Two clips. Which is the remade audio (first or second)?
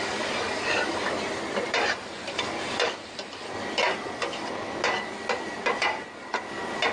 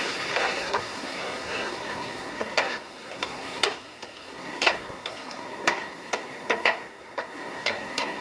second